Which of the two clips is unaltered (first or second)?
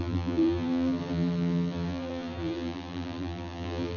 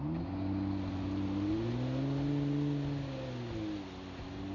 second